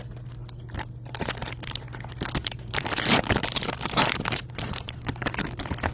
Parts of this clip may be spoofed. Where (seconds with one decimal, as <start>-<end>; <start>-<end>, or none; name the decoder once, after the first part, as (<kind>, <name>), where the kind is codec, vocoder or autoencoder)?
2.4-5.3 (vocoder, BigVGAN v2)